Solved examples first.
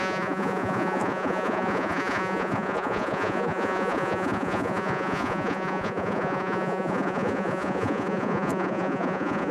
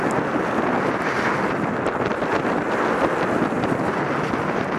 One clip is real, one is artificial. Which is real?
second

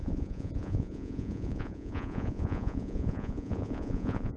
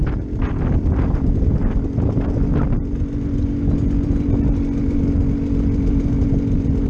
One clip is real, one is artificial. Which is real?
second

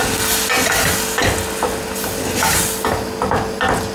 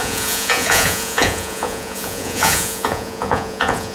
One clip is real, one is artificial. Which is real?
first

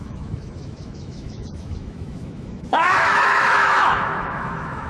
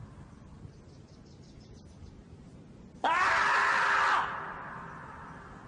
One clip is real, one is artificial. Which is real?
second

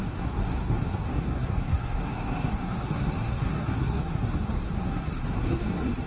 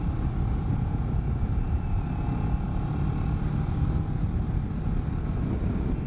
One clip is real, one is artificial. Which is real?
second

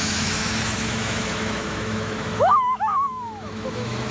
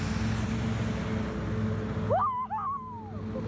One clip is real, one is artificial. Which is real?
second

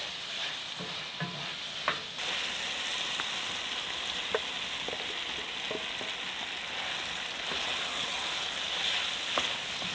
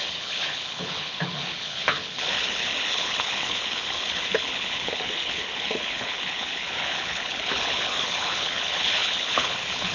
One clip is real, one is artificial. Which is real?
first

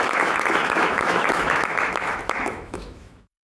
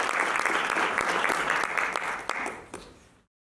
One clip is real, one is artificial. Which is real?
second